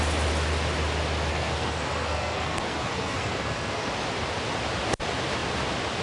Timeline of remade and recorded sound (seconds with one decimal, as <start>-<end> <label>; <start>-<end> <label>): 0.0-1.3 recorded; 1.3-3.9 remade; 3.9-6.0 recorded